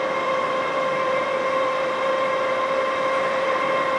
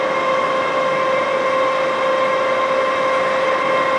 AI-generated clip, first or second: first